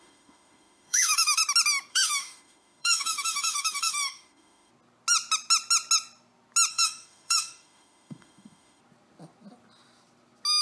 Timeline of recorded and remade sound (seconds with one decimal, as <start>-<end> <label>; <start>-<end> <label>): 0.0-1.4 remade; 1.4-1.9 recorded; 1.9-4.7 remade; 4.7-6.7 recorded; 6.7-8.8 remade; 8.8-10.6 recorded